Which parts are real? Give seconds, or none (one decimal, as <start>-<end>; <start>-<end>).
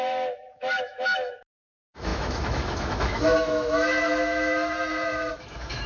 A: none